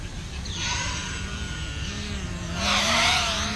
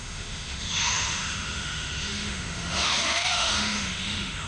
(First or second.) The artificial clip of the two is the second